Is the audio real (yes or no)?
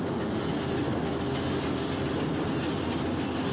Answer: yes